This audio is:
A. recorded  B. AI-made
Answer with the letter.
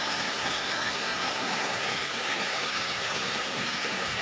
B